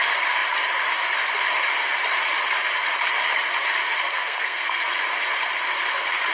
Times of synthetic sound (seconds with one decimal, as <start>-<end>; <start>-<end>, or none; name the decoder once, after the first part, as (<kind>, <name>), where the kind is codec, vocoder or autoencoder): 4.1-4.8 (codec, SNAC)